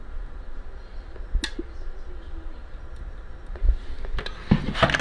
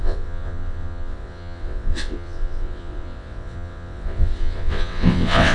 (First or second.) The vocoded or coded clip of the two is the second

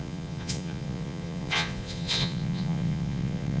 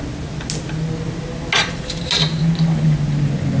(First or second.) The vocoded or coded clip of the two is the first